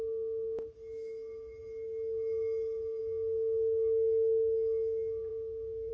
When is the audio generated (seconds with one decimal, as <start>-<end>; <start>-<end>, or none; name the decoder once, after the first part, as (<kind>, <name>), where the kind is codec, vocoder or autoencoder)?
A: none